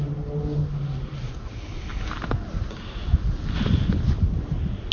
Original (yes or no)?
yes